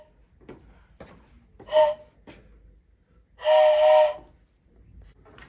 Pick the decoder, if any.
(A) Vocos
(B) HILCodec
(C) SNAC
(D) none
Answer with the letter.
D